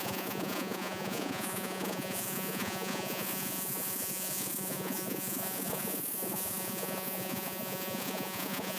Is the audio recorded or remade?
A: remade